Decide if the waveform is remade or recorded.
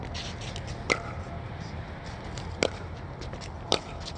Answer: recorded